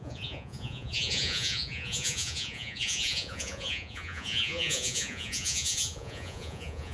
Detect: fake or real fake